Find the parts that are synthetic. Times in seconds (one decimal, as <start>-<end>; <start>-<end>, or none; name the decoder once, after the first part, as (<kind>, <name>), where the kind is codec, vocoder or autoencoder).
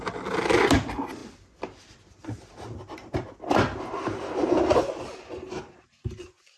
none